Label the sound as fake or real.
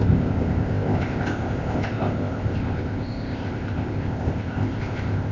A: fake